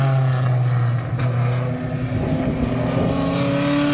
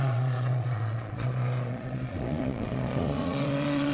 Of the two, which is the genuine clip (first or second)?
first